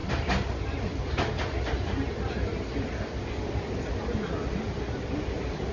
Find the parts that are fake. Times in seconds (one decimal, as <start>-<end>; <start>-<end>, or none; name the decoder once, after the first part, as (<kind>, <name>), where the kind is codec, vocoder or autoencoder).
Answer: none